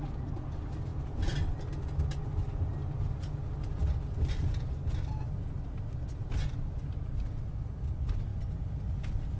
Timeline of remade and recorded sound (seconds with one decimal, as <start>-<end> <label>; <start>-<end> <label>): 0.0-9.4 recorded

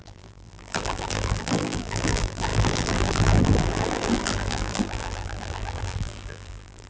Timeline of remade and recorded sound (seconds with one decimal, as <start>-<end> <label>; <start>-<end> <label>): 0.0-6.9 remade